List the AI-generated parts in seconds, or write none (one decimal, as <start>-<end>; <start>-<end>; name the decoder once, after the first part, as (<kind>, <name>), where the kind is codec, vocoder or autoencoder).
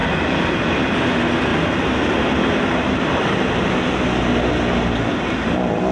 0.0-1.0 (vocoder, BigVGAN v2); 1.5-3.7